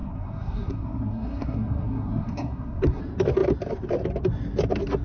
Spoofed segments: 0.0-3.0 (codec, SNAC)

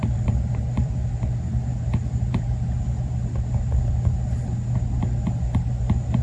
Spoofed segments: 0.0-0.9 (vocoder, BigVGAN v2)

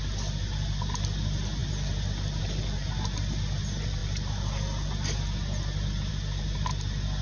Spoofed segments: none

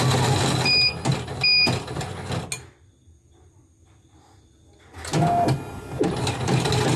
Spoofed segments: none

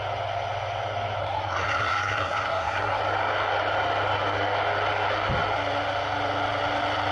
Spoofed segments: 1.2-3.0 (codec, SNAC)

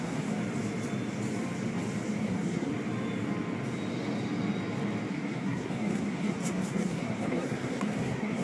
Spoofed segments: 0.0-0.4 (codec, SNAC); 2.2-2.7; 5.1-8.4

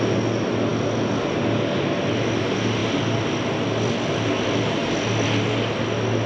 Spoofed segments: none